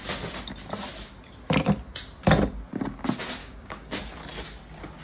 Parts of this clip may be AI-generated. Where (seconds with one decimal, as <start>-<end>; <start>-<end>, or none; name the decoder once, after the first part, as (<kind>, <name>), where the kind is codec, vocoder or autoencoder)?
3.4-4.0 (codec, DAC)